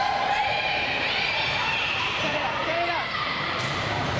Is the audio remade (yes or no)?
yes